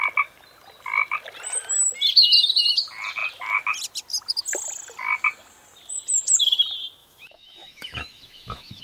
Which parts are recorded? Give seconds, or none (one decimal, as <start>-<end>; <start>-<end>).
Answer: 0.0-7.0